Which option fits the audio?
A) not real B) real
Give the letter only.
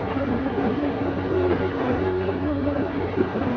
A